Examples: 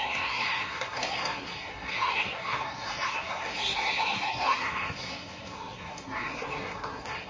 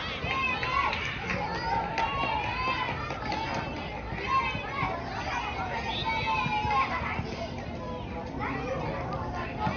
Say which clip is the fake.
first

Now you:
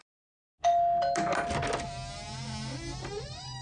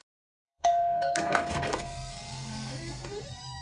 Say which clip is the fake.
second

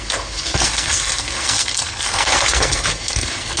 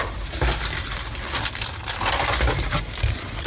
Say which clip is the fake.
first